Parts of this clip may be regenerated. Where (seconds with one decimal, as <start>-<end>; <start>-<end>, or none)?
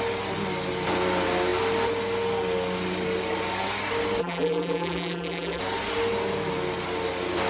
4.2-5.6